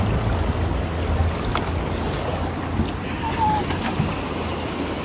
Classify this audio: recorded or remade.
recorded